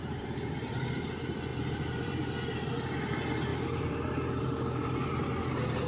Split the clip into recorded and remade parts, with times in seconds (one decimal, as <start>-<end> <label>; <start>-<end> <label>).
0.0-1.1 remade; 1.1-1.5 recorded; 1.5-2.7 remade; 2.7-3.5 recorded; 3.5-4.5 remade; 4.5-5.9 recorded